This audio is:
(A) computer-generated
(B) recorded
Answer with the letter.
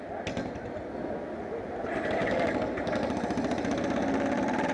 B